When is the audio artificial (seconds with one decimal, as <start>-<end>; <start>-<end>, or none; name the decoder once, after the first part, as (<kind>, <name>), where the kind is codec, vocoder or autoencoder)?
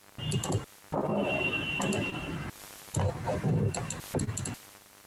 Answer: 1.1-3.9 (vocoder, BigVGAN v2)